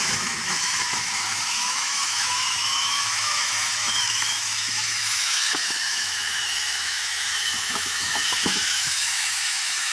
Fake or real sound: fake